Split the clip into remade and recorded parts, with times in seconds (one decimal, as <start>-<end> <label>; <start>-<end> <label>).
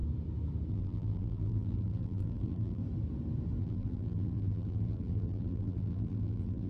0.0-0.7 recorded; 0.7-2.8 remade; 2.8-3.6 recorded; 3.6-6.7 remade